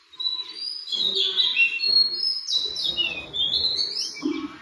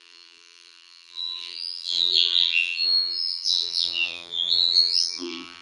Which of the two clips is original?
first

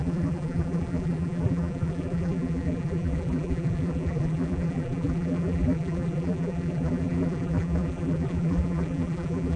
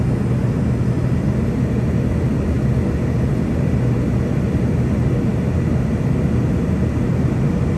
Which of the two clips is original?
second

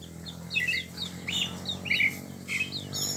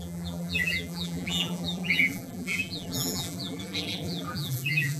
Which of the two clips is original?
first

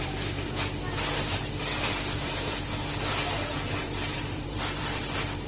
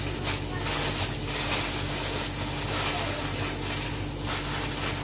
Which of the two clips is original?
second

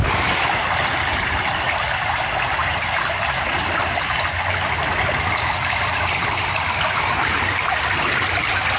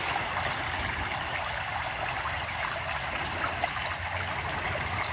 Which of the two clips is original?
second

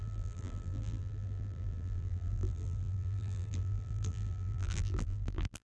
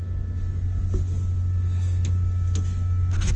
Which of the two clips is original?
second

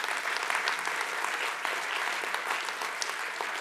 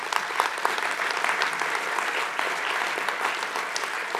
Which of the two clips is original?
first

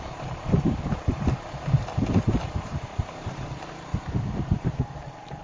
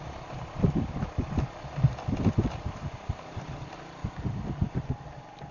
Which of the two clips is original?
second